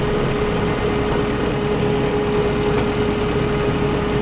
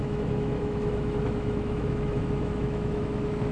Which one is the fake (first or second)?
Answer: second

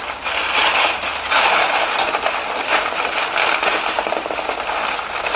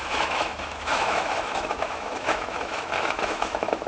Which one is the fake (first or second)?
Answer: second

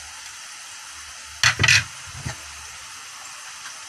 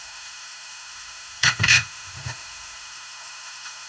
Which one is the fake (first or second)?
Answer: second